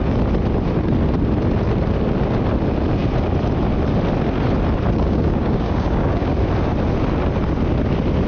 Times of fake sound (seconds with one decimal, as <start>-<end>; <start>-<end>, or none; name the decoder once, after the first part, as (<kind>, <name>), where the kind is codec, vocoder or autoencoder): 5.0-6.3 (codec, DAC)